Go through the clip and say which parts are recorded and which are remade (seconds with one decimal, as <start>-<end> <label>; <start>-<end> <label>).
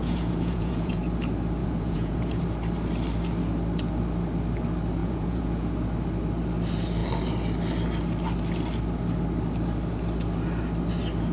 0.0-1.0 remade; 1.0-1.6 recorded; 1.6-2.4 remade; 2.4-5.0 recorded; 5.0-5.7 remade; 5.7-11.3 recorded